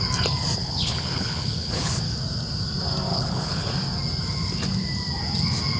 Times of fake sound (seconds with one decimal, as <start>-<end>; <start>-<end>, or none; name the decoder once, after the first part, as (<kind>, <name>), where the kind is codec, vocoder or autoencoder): 0.6-2.0 (codec, HILCodec); 3.1-3.7